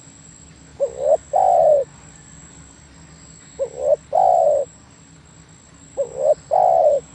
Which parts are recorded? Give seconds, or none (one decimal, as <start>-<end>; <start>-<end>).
0.0-4.3; 5.2-7.1